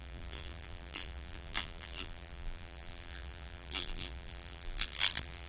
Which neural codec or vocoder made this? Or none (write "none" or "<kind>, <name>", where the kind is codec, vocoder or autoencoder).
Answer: vocoder, BigVGAN v2